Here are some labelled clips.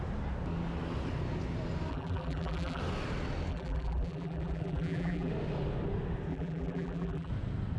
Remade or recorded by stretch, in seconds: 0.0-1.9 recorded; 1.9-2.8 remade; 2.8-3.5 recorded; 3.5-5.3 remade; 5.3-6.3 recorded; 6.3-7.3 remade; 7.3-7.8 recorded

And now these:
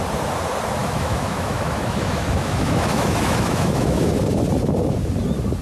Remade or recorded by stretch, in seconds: 0.0-0.8 recorded; 0.8-4.2 remade; 4.2-5.6 recorded

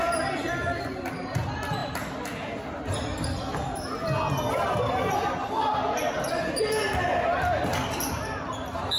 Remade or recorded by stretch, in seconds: 0.0-9.0 recorded